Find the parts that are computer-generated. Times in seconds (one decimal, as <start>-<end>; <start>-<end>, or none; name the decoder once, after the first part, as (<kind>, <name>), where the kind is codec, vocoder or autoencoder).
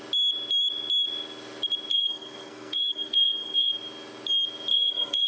1.9-3.7 (codec, SNAC); 4.7-5.3